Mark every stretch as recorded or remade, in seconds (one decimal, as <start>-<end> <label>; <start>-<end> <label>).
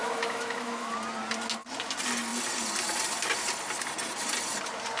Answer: 0.0-0.9 remade; 0.9-5.0 recorded